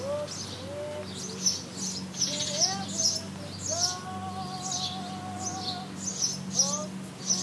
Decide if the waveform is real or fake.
real